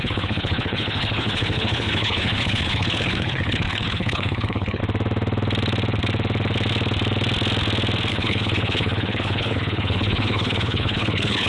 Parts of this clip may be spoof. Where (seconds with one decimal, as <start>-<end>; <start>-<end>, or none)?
0.0-4.8; 8.1-11.5